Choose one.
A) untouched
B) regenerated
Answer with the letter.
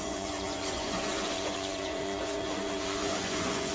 B